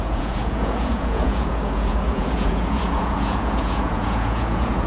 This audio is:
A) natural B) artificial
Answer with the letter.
B